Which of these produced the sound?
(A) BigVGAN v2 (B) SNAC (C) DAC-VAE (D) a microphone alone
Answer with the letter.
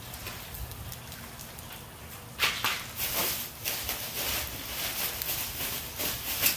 D